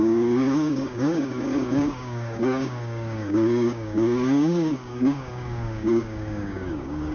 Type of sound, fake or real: fake